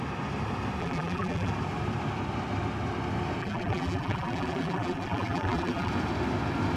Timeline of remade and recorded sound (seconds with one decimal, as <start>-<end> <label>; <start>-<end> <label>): 0.0-0.8 recorded; 0.8-1.5 remade; 1.5-3.4 recorded; 3.4-5.9 remade; 5.9-6.8 recorded